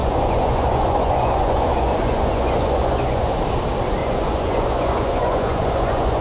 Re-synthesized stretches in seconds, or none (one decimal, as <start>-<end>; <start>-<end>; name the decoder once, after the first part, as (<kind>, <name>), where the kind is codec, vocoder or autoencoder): 0.0-3.4 (vocoder, Vocos); 4.0-6.2